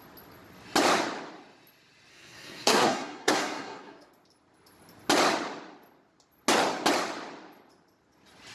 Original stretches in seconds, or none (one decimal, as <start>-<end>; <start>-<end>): 0.0-2.1; 4.1-8.5